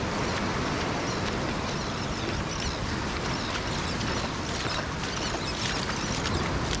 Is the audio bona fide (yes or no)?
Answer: yes